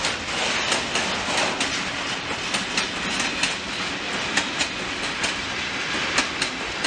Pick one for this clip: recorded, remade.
recorded